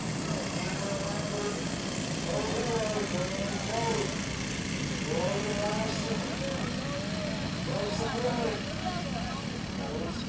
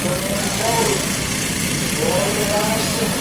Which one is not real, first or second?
second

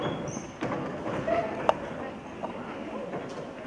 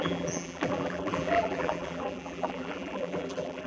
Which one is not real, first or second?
second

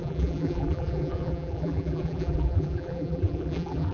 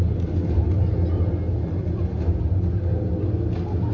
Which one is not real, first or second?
first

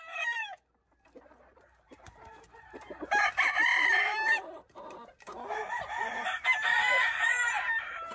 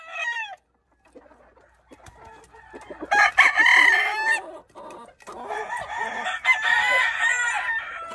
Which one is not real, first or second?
first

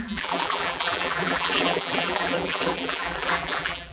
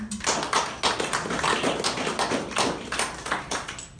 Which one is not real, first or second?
first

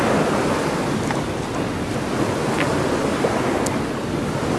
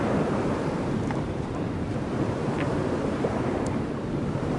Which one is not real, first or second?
second